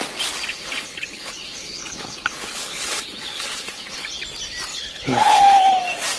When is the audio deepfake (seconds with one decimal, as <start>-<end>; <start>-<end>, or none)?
0.5-4.2; 4.7-5.8